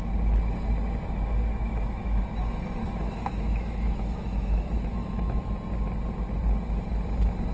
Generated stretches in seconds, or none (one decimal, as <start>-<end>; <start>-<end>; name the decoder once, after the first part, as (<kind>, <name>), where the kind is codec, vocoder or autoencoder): 1.5-2.2 (autoencoder, DAC-VAE); 2.8-5.4